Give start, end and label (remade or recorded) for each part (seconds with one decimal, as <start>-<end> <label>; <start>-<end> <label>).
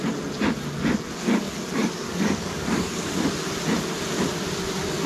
0.0-1.8 recorded; 1.8-3.3 remade; 3.3-5.1 recorded